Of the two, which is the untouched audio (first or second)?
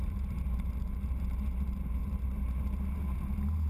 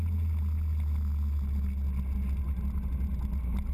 second